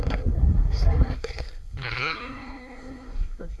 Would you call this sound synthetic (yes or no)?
yes